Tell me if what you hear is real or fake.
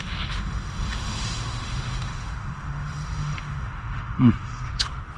fake